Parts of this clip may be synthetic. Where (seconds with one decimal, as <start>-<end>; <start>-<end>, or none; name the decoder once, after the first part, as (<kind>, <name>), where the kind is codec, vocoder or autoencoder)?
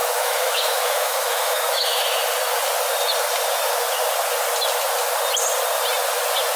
0.0-2.0 (autoencoder, DAC-VAE)